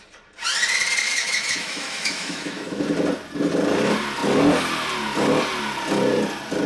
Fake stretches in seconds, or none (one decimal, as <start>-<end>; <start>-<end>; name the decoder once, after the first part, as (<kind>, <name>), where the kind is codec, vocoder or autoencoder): 1.0-2.8 (autoencoder, DAC-VAE)